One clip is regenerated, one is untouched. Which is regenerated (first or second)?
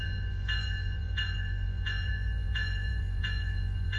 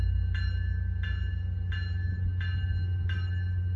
first